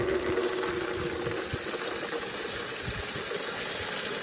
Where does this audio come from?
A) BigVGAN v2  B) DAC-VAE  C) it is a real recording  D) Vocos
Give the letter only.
C